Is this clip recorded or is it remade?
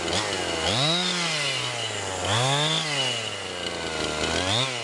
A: recorded